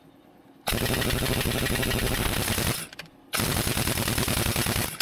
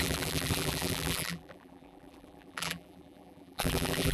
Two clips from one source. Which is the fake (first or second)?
second